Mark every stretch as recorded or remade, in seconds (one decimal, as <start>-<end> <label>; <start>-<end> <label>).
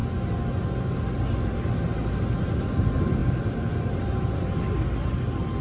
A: 0.0-5.6 recorded